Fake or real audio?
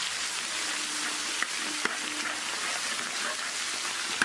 real